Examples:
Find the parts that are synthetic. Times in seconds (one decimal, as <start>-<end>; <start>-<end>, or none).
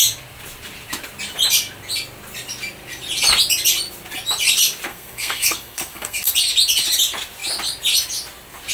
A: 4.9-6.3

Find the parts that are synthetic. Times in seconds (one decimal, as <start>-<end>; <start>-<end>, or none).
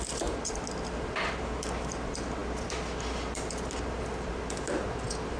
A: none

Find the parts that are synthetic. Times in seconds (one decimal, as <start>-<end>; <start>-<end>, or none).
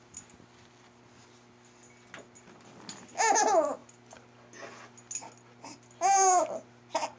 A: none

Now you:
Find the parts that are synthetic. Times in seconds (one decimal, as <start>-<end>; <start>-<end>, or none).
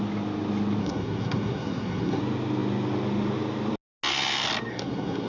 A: 0.8-2.2; 4.7-5.3